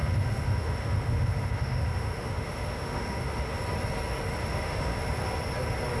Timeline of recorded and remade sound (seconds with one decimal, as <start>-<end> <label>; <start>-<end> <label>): 0.0-3.6 remade; 3.6-4.4 recorded; 4.4-5.0 remade; 5.0-6.0 recorded